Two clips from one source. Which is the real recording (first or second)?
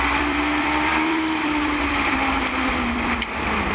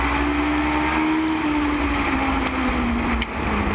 second